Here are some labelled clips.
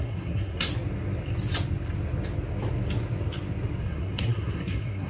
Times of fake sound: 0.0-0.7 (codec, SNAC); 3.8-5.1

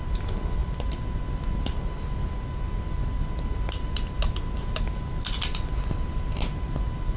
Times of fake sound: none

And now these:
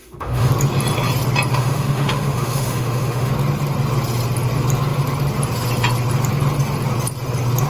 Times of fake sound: 0.0-0.5 (autoencoder, DAC-VAE); 1.5-3.3